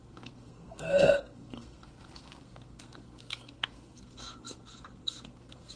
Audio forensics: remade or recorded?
remade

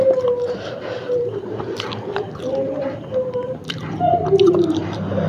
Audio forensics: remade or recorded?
remade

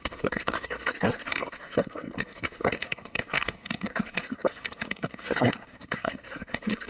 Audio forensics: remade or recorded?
remade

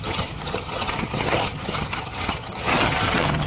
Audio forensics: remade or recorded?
remade